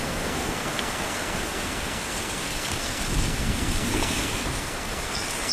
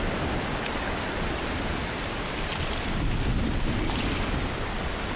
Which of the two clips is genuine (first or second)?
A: second